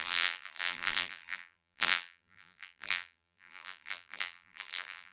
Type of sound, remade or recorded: remade